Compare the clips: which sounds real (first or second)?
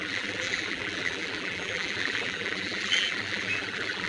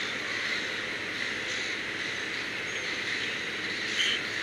second